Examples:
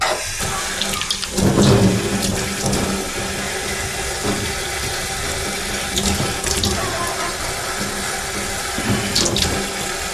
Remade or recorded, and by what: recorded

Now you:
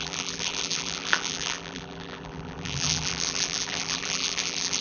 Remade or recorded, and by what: remade, vocoder, BigVGAN v2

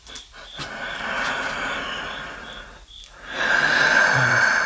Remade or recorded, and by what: remade, vocoder, BigVGAN v2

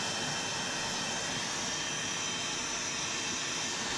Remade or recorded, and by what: recorded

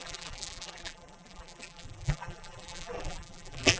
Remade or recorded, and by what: remade, vocoder, BigVGAN v2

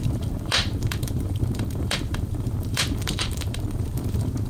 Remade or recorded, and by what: remade, vocoder, BigVGAN v2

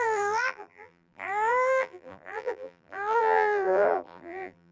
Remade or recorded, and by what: remade, vocoder, BigVGAN v2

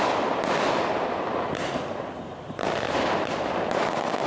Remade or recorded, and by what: recorded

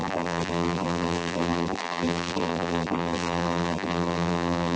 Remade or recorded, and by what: remade, vocoder, BigVGAN v2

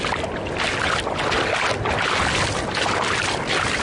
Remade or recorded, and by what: recorded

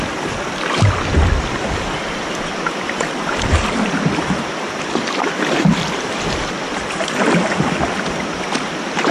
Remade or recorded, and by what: remade, vocoder, BigVGAN v2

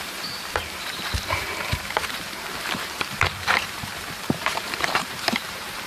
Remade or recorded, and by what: remade, vocoder, BigVGAN v2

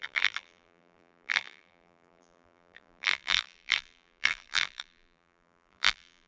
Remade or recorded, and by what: remade, vocoder, BigVGAN v2